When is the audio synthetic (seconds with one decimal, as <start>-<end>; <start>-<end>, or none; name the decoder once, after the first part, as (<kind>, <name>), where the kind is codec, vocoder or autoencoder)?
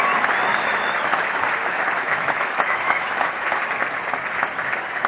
0.5-3.6 (autoencoder, DAC-VAE)